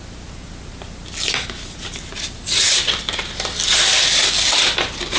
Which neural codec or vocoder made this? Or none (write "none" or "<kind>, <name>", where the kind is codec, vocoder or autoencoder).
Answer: none